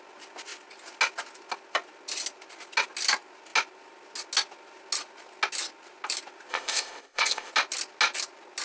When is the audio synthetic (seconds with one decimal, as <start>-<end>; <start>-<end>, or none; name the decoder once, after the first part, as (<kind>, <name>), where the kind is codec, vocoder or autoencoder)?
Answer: 6.5-7.5 (codec, ZipCodec)